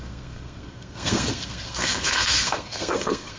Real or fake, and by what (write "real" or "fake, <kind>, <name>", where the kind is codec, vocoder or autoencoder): fake, codec, SNAC